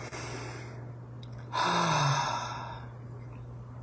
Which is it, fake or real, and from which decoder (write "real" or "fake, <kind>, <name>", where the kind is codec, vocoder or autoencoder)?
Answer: real